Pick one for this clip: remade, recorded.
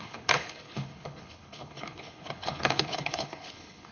remade